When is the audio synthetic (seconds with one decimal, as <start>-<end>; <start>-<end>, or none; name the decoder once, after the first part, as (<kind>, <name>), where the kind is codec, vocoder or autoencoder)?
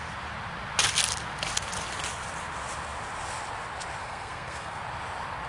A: 4.0-4.8 (codec, SNAC)